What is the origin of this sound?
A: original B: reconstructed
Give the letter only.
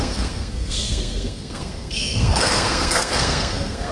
B